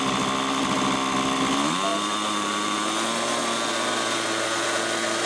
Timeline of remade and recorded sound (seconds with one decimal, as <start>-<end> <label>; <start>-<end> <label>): 0.0-5.3 recorded